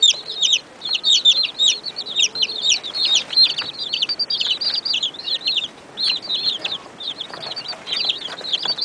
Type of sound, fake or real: real